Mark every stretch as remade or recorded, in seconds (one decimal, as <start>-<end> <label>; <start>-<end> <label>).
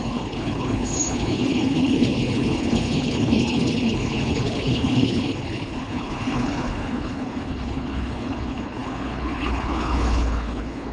0.0-10.9 remade